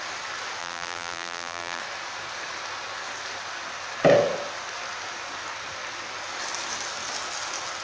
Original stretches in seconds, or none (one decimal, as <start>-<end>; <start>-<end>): 0.0-0.6; 1.8-7.8

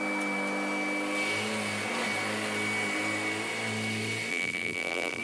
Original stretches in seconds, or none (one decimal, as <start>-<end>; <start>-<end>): 0.0-4.3

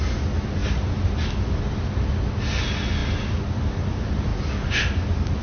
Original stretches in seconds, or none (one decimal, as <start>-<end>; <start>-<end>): 0.0-5.4

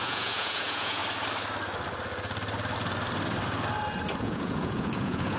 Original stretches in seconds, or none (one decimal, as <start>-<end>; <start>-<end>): 1.0-4.2